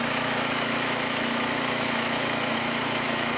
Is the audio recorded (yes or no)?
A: no